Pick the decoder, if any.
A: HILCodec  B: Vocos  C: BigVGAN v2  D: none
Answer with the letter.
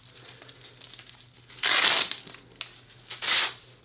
D